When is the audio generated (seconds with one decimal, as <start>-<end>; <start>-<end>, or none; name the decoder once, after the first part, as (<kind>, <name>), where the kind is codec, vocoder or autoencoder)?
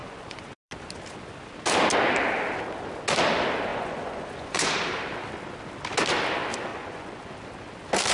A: 0.0-0.7 (vocoder, Vocos); 3.7-4.6; 6.7-7.3